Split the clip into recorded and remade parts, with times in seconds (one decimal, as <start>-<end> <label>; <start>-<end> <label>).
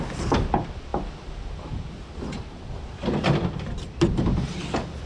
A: 0.0-5.1 recorded